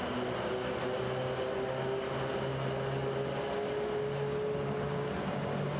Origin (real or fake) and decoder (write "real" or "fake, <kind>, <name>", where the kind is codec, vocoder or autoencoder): real